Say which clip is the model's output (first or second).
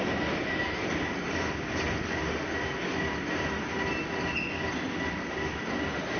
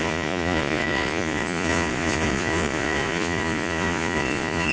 second